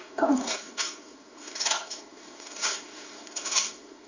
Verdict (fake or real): fake